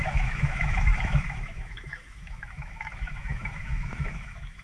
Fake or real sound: fake